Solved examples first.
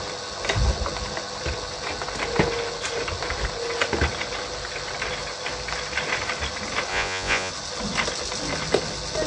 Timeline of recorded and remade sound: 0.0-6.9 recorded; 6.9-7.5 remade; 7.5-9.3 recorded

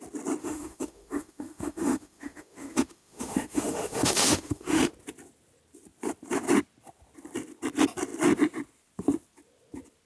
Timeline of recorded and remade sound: 0.0-0.4 recorded; 0.4-4.9 remade; 4.9-10.1 recorded

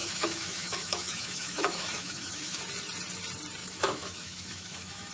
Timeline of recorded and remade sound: 0.0-2.6 remade; 2.6-3.6 recorded; 3.6-5.1 remade

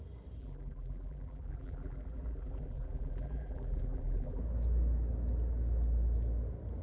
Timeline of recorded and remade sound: 0.0-0.4 recorded; 0.4-4.4 remade; 4.4-6.8 recorded

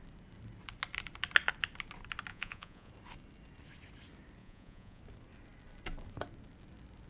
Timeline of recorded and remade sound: 0.0-2.3 recorded; 2.3-2.9 remade; 2.9-4.4 recorded; 4.4-5.0 remade; 5.0-7.1 recorded

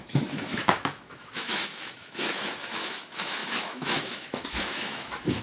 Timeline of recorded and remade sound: 0.0-5.4 remade

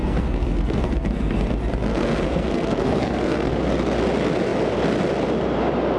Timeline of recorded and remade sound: 0.0-1.4 remade; 1.4-1.9 recorded; 1.9-3.5 remade; 3.5-6.0 recorded